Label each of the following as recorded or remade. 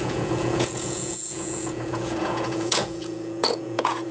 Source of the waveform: remade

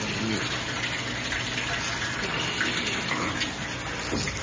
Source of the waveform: recorded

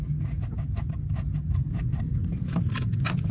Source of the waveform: recorded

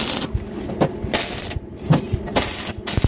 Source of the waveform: recorded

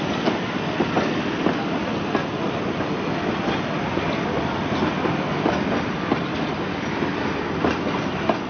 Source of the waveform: recorded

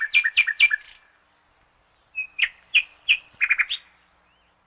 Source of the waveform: recorded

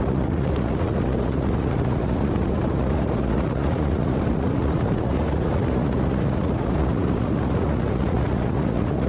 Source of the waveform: remade